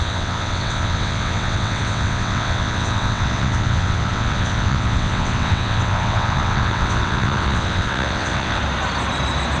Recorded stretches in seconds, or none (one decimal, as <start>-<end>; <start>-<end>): 8.6-9.6